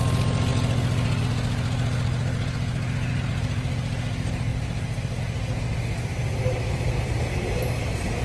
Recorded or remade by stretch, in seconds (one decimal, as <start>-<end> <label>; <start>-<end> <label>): 0.0-8.2 recorded